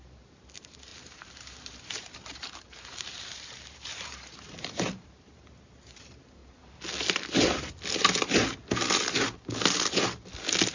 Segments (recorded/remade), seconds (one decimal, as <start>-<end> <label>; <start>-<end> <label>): 0.0-6.4 remade; 6.4-10.7 recorded